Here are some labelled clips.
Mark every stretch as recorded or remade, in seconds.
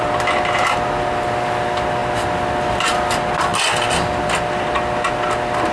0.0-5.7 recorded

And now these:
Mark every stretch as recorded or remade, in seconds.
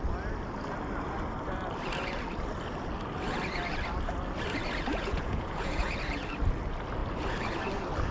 0.0-4.9 recorded; 4.9-5.9 remade; 5.9-8.1 recorded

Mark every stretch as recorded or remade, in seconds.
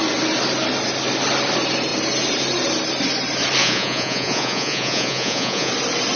0.0-3.6 recorded; 3.6-5.7 remade; 5.7-6.2 recorded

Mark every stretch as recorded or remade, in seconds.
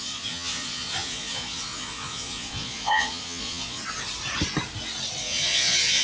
0.0-3.8 remade; 3.8-5.2 recorded; 5.2-6.0 remade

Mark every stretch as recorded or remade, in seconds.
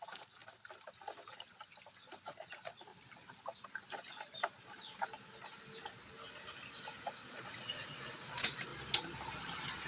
0.0-0.4 remade; 0.4-2.5 recorded; 2.5-2.9 remade; 2.9-7.0 recorded; 7.0-8.7 remade; 8.7-9.9 recorded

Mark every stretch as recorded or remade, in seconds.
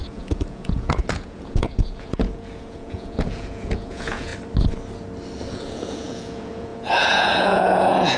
0.0-4.3 remade; 4.3-5.5 recorded; 5.5-8.2 remade